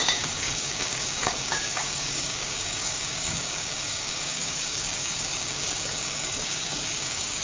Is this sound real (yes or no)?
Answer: no